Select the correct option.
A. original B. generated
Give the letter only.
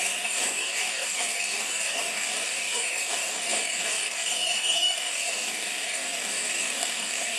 B